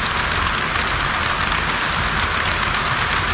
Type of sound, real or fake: real